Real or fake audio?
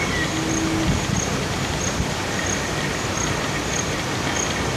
real